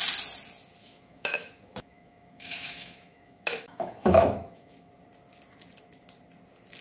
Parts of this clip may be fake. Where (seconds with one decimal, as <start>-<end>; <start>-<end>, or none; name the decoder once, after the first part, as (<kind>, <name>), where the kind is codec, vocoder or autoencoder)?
0.8-4.9 (autoencoder, DAC-VAE)